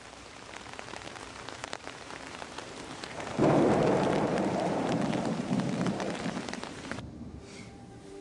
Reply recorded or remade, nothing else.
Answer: remade